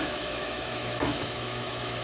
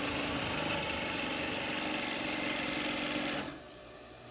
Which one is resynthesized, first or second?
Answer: first